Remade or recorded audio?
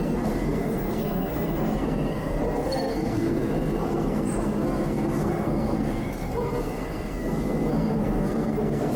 remade